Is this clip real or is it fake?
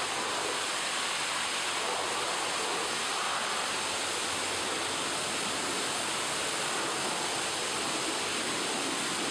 real